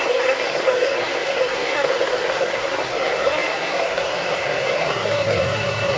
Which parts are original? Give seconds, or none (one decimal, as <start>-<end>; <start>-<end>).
none